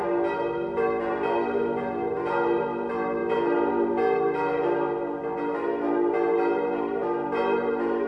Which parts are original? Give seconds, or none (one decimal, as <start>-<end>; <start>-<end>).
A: 0.0-8.1